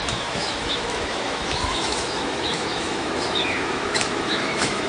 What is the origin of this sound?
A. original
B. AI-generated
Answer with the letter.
B